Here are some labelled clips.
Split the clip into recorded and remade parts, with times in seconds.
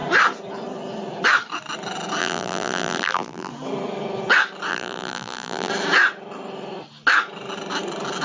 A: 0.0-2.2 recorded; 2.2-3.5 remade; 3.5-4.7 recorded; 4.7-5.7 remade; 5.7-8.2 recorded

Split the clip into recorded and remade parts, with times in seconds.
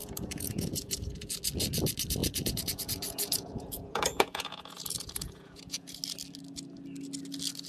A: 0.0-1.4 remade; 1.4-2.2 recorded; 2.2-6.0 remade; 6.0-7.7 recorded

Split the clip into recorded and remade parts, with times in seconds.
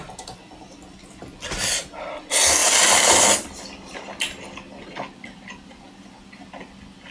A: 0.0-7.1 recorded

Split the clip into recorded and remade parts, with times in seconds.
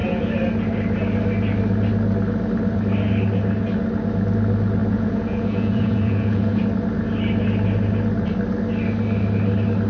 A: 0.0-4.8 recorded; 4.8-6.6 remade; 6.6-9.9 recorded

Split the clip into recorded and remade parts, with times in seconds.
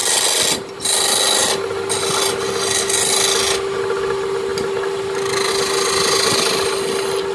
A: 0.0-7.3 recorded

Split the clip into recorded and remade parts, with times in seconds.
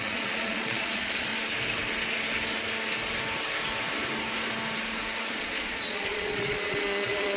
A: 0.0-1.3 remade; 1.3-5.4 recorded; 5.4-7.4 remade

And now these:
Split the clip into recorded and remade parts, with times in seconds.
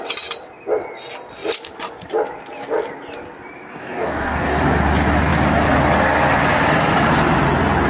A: 0.0-3.7 recorded; 3.7-4.6 remade; 4.6-7.9 recorded